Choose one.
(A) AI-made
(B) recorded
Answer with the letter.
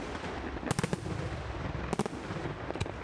B